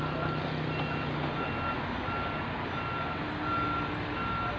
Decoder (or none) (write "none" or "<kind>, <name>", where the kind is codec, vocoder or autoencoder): none